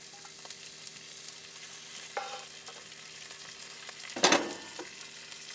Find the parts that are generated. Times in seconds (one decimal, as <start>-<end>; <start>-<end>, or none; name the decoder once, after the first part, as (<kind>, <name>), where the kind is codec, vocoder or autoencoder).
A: none

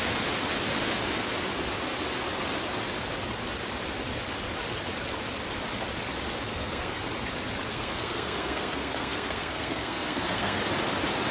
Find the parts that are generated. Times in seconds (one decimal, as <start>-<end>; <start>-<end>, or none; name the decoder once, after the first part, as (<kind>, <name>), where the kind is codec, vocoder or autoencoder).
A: 6.5-7.0 (codec, SNAC); 7.7-10.6

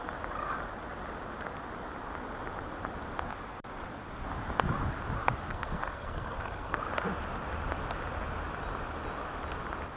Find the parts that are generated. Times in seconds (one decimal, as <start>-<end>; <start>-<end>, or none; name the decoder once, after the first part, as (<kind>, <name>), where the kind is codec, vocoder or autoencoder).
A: 5.5-6.8 (codec, SNAC)

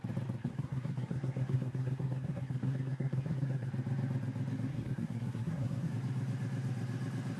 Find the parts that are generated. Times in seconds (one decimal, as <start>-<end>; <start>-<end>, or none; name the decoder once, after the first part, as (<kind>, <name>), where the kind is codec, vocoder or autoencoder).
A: 0.4-3.7 (codec, SNAC); 4.7-5.9